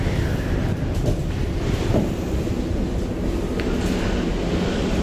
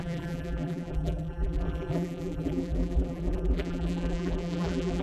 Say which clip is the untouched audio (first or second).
first